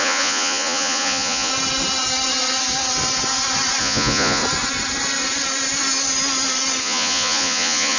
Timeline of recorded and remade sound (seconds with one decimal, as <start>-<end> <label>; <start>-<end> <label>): 0.0-1.5 remade; 1.5-3.8 recorded; 3.8-4.4 remade; 4.4-6.8 recorded; 6.8-8.0 remade